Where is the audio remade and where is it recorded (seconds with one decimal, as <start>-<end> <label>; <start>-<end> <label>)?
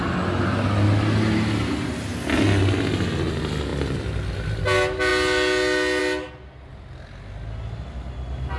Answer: 0.0-8.6 recorded